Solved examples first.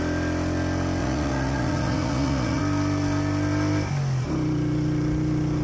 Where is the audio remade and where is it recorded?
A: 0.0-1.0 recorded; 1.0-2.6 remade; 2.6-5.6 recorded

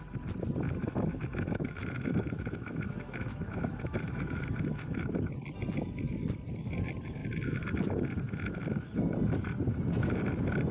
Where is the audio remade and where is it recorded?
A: 0.0-0.8 recorded; 0.8-5.1 remade; 5.1-10.7 recorded

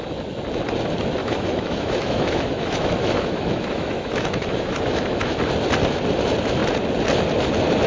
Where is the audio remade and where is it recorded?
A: 0.0-1.2 recorded; 1.2-5.4 remade; 5.4-7.9 recorded

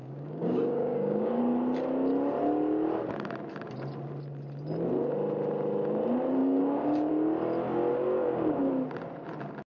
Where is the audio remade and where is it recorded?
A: 0.0-1.4 remade; 1.4-6.4 recorded; 6.4-7.1 remade; 7.1-7.9 recorded; 7.9-8.7 remade; 8.7-9.8 recorded

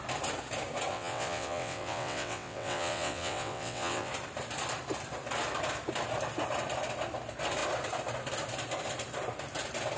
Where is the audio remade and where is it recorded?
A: 0.0-0.9 recorded; 0.9-4.1 remade; 4.1-10.0 recorded